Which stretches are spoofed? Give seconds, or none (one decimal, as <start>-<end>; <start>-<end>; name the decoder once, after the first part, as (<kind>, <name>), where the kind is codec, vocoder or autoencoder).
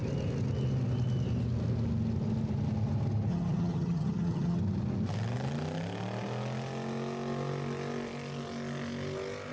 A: 3.3-4.6 (vocoder, HiFi-GAN)